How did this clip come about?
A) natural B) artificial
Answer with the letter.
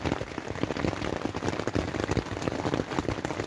A